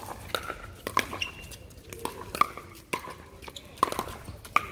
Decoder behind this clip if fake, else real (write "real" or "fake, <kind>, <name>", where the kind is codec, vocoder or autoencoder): real